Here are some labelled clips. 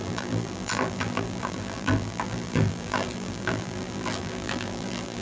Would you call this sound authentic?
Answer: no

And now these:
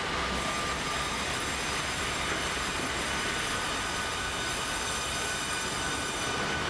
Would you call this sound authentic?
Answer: yes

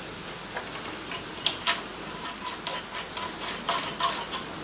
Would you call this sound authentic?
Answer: yes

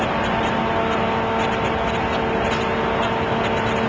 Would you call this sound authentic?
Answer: yes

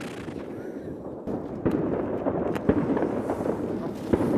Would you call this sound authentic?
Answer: yes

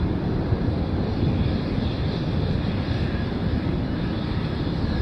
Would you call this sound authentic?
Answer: yes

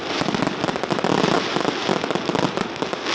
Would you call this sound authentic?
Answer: yes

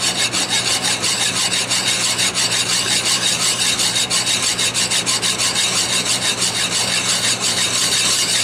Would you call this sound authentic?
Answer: no